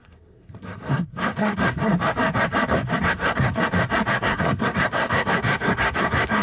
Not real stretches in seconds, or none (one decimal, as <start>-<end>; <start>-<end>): 0.0-1.8; 3.0-3.6; 4.2-6.4